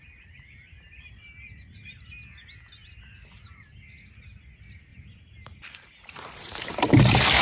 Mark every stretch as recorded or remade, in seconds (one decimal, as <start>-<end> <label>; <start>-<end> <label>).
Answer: 0.0-4.9 recorded; 4.9-7.0 remade; 7.0-7.4 recorded